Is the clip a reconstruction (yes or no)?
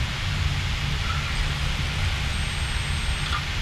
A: no